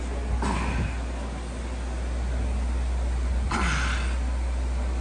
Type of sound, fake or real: real